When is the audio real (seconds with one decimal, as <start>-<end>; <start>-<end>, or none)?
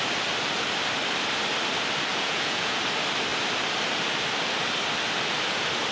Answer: 0.0-2.1; 2.8-5.9